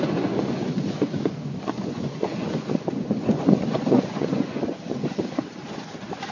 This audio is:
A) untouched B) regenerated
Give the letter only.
B